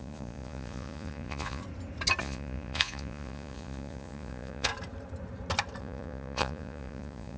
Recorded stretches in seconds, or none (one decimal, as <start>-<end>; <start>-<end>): 1.6-2.2; 4.7-5.8